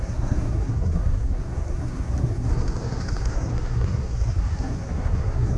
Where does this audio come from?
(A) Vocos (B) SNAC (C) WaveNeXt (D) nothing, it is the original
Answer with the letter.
B